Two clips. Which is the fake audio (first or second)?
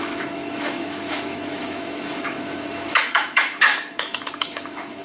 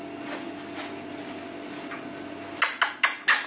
first